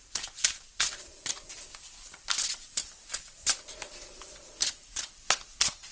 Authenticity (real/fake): real